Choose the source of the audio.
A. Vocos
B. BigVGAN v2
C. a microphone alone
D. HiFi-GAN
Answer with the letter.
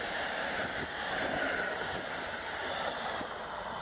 C